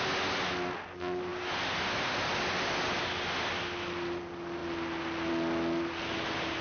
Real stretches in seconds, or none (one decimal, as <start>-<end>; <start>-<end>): 0.0-6.6